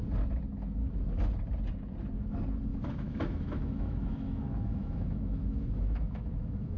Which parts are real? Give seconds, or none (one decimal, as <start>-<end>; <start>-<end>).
0.0-2.7